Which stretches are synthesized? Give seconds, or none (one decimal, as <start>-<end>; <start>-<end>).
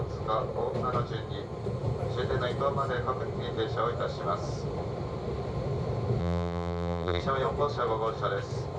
6.2-7.2